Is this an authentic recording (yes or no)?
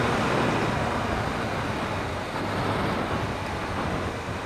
yes